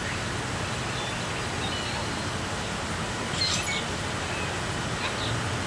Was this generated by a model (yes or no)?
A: no